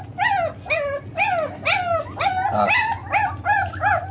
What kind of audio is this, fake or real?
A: real